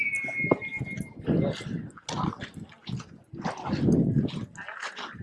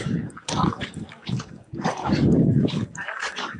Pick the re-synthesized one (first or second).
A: second